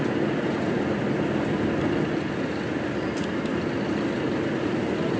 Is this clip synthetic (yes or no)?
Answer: no